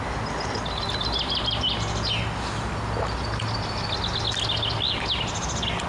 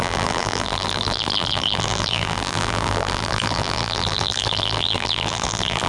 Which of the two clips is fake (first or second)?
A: second